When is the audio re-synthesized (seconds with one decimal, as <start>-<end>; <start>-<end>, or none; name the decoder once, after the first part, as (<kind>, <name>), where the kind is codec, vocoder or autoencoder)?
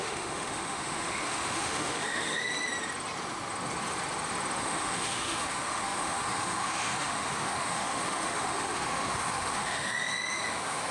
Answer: 0.0-2.5 (autoencoder, DAC-VAE); 4.6-10.9